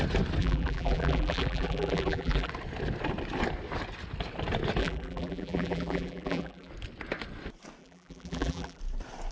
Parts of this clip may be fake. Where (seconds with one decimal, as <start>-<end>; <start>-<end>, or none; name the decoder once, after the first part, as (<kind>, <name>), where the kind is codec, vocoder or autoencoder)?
0.4-2.5 (vocoder, BigVGAN v2); 4.8-6.7; 7.8-8.8